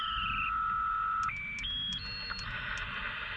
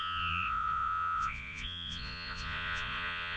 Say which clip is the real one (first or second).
first